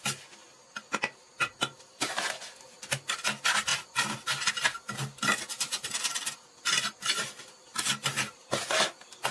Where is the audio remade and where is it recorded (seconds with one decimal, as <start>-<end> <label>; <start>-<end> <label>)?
0.0-9.3 recorded